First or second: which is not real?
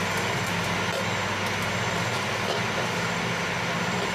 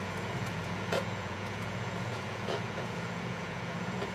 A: second